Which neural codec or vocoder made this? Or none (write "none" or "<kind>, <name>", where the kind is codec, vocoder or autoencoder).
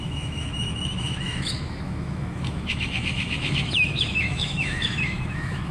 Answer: autoencoder, DAC-VAE